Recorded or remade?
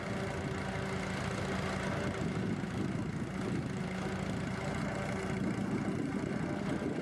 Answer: recorded